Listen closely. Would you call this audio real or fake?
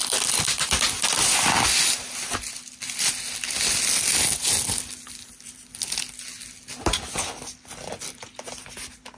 real